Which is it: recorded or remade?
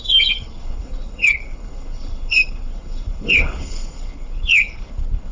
remade